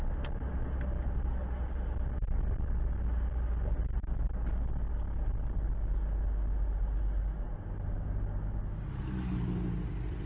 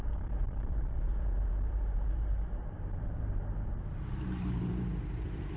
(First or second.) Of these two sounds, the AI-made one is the second